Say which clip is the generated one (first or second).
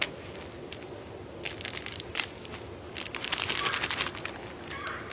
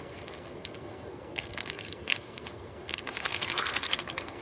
second